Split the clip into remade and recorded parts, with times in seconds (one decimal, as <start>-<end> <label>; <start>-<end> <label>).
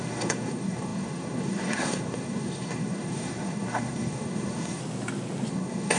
0.0-4.8 remade; 4.8-5.5 recorded; 5.5-6.0 remade